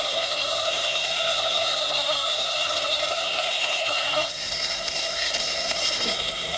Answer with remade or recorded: remade